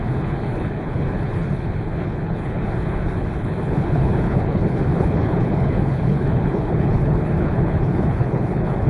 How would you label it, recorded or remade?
remade